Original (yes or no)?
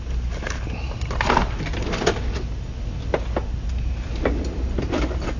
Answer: yes